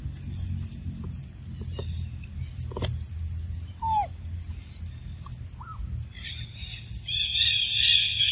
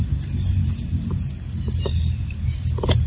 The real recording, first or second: first